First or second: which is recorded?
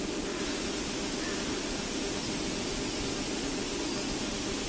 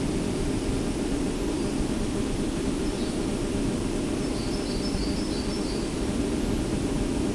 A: first